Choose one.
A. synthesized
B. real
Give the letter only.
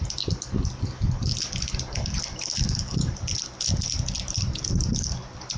B